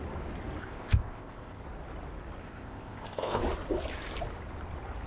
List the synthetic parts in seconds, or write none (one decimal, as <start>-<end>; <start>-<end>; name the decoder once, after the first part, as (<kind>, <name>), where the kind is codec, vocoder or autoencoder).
0.6-1.6 (codec, ZipCodec); 2.4-3.4